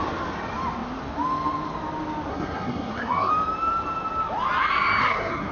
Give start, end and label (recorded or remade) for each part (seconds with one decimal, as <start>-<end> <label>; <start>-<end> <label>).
0.0-2.3 recorded; 2.3-3.3 remade; 3.3-5.0 recorded; 5.0-5.5 remade